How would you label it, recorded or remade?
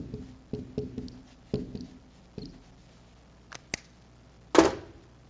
recorded